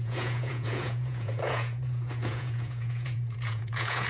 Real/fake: fake